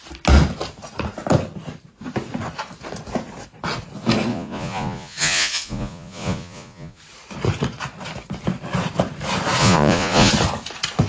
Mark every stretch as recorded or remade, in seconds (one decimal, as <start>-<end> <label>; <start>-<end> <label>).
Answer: 0.0-4.3 recorded; 4.3-7.0 remade; 7.0-9.6 recorded; 9.6-10.3 remade; 10.3-11.1 recorded